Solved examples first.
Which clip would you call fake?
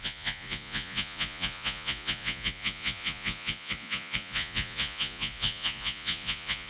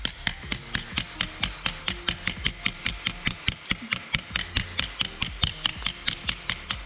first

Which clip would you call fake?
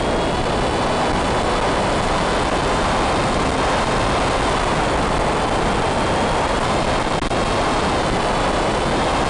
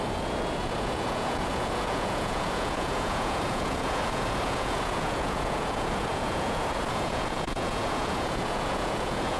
second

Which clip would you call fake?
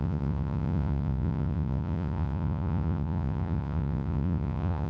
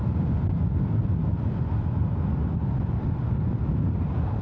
first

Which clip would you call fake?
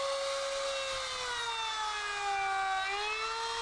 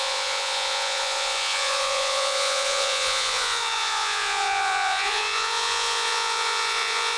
second